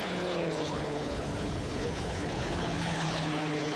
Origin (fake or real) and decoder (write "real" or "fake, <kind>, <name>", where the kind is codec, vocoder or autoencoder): fake, codec, HILCodec